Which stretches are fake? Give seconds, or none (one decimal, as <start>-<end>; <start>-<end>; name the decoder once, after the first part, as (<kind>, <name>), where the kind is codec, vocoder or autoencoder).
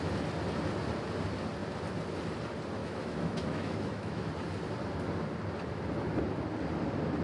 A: 2.8-4.2 (autoencoder, DAC-VAE)